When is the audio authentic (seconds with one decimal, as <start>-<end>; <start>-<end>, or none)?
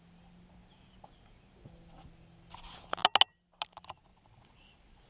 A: 0.0-4.1